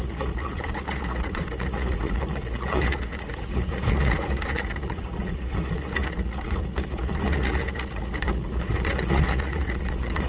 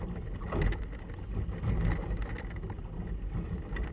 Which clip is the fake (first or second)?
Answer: first